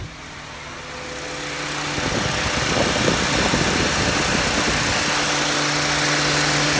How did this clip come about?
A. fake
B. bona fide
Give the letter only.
B